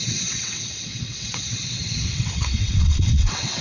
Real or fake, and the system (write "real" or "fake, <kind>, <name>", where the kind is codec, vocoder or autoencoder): fake, vocoder, WaveNeXt